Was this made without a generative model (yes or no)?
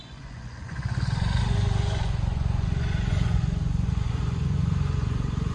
no